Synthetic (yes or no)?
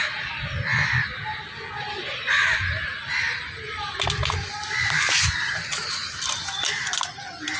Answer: no